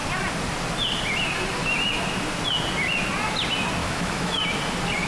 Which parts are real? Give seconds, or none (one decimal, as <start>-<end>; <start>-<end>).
0.0-3.8; 4.4-5.1